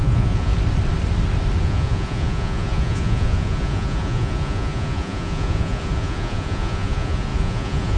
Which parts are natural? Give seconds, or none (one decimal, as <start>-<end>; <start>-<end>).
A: 0.5-1.6